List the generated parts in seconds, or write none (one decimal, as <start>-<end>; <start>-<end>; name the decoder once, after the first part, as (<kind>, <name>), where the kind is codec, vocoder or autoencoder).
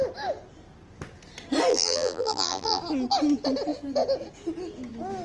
1.7-2.8 (vocoder, BigVGAN v2)